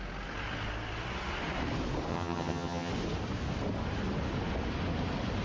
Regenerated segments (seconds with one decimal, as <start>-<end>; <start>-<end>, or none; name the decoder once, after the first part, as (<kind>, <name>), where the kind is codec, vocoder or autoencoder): 2.1-2.9 (vocoder, HiFi-GAN)